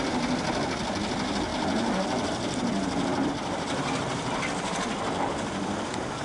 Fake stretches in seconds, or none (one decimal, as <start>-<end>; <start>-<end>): none